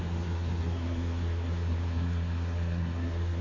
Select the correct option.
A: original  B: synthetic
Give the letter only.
B